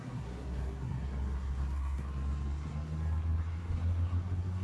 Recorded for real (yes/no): no